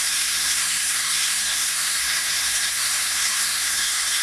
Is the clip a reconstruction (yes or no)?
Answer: yes